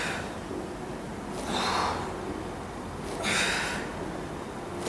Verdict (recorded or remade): recorded